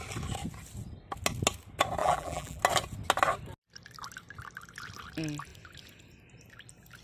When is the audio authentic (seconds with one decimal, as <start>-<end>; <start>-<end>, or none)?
0.0-2.0; 2.6-7.0